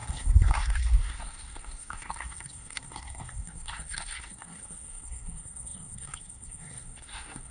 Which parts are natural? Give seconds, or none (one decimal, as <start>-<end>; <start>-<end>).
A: none